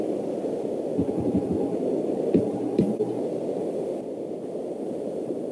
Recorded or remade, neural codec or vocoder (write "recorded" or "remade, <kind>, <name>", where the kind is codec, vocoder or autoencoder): recorded